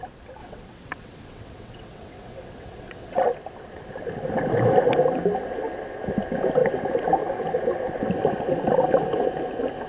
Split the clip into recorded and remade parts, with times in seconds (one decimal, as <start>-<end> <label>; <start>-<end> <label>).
0.0-0.4 recorded; 0.4-3.2 remade; 3.2-9.9 recorded